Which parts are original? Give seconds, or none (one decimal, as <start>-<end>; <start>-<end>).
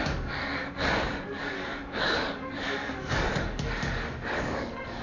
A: none